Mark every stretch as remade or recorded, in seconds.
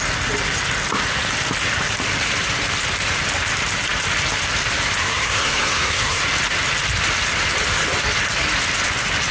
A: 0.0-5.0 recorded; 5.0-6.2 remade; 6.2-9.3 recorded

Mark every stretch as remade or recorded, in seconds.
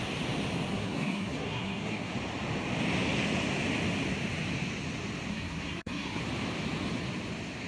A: 0.0-0.7 recorded; 0.7-2.1 remade; 2.1-5.3 recorded; 5.3-6.2 remade; 6.2-7.7 recorded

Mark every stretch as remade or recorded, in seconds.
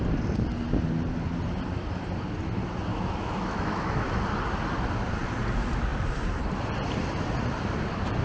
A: 0.0-2.9 recorded; 2.9-4.2 remade; 4.2-8.2 recorded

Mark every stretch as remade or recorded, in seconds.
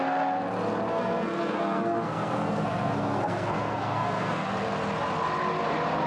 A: 0.0-0.9 recorded; 0.9-4.5 remade; 4.5-6.1 recorded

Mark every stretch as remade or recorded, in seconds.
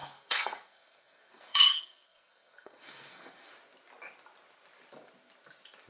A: 0.0-3.5 remade; 3.5-5.9 recorded